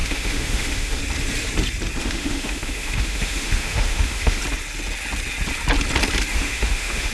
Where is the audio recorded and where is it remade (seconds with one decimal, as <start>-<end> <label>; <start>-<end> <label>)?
0.0-1.0 remade; 1.0-2.0 recorded; 2.0-4.4 remade; 4.4-6.3 recorded; 6.3-7.1 remade